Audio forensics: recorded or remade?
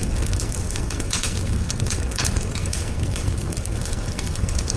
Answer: remade